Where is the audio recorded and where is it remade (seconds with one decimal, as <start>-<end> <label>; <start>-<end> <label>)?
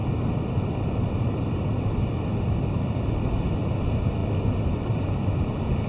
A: 0.0-5.9 recorded